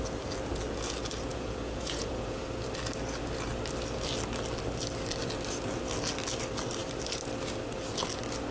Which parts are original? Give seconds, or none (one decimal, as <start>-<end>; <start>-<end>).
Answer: 0.0-1.3; 2.4-8.5